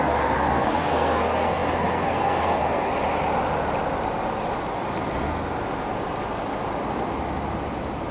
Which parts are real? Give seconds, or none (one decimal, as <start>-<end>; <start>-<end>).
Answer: 2.9-8.1